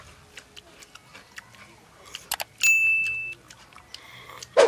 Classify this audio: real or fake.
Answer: real